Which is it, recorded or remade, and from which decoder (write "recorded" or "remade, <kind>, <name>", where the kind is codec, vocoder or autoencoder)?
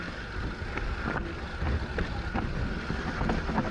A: recorded